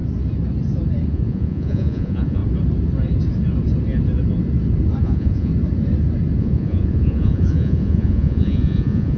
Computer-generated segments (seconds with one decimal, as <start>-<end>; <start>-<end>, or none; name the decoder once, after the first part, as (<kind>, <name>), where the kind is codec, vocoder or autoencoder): 1.1-2.4 (vocoder, Vocos); 5.0-5.5; 6.4-9.2